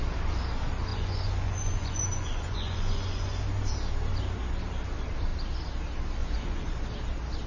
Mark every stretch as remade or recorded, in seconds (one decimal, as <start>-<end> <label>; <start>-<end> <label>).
0.0-0.9 recorded; 0.9-3.4 remade; 3.4-6.2 recorded; 6.2-6.7 remade; 6.7-7.5 recorded